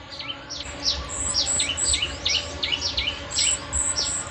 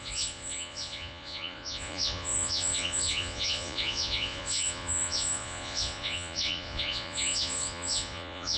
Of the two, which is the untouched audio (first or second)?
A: first